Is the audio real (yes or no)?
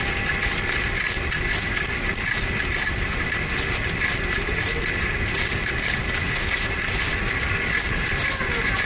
yes